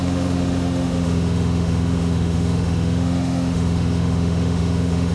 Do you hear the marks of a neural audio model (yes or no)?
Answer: yes